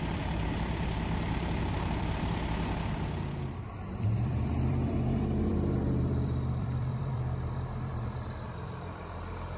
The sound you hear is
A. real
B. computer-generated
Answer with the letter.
B